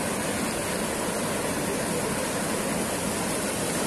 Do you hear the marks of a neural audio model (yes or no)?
no